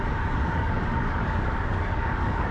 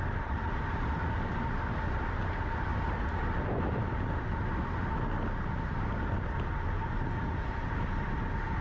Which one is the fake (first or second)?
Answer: first